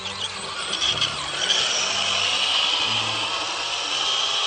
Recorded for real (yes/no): yes